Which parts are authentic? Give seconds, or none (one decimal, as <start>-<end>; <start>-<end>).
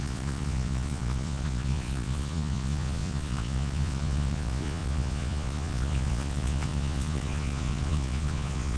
none